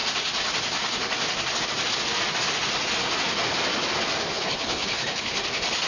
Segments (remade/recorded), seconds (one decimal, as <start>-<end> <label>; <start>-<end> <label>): 0.0-4.3 recorded; 4.3-5.3 remade; 5.3-5.9 recorded